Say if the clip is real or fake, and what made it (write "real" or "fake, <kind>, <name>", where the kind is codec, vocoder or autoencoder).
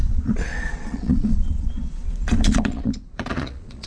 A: fake, vocoder, Vocos